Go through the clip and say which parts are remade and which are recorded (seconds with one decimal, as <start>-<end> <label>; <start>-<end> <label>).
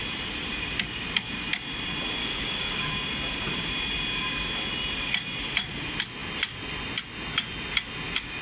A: 0.0-2.2 recorded; 2.2-2.9 remade; 2.9-8.4 recorded